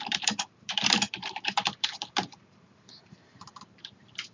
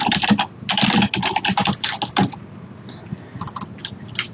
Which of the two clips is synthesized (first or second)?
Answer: first